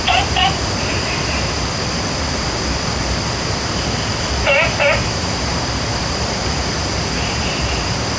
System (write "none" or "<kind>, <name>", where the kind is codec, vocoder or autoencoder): vocoder, BigVGAN v2